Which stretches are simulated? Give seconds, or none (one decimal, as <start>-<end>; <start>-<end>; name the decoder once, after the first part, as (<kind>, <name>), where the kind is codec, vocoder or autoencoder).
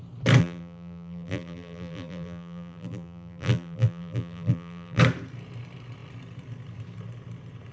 0.4-5.0 (vocoder, BigVGAN v2)